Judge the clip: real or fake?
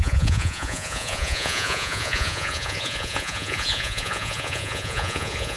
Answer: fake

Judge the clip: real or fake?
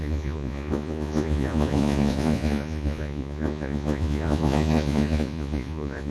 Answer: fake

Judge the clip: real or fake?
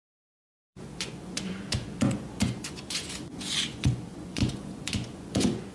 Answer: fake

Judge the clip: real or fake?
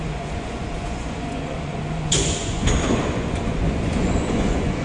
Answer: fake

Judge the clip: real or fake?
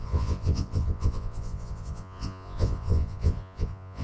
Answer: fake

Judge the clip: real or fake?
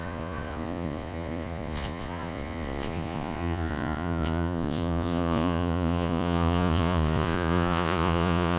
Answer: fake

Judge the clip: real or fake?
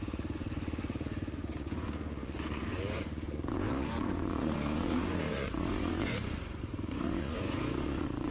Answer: fake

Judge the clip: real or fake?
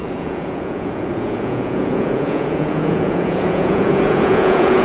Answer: fake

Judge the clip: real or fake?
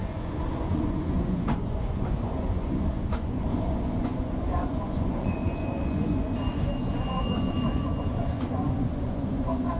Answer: fake